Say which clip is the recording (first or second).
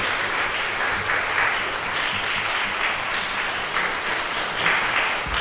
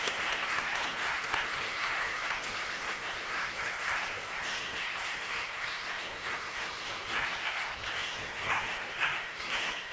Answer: first